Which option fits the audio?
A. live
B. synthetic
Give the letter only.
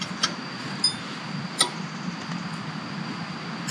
A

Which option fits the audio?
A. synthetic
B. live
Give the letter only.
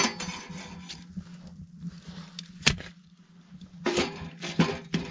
B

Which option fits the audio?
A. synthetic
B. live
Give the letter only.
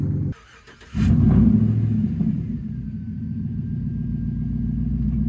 B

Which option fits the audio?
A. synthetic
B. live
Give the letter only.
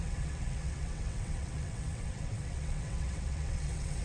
A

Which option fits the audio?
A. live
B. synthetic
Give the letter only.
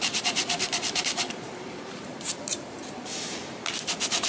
B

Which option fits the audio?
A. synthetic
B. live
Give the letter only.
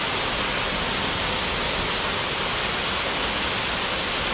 B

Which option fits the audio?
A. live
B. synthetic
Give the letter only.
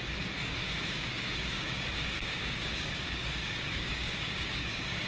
B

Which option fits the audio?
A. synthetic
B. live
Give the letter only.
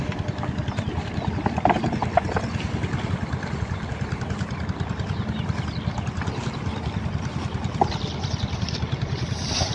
B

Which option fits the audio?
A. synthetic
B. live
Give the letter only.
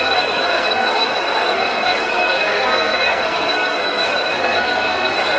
A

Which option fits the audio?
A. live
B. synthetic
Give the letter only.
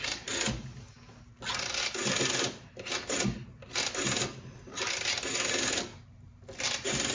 A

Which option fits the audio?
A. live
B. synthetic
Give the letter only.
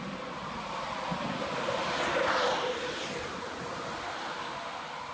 A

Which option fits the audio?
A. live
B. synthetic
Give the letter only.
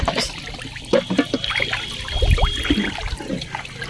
A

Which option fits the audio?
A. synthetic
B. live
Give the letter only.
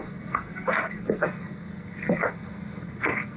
A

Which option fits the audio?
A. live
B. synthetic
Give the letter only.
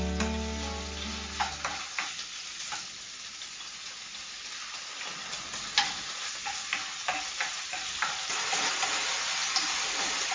A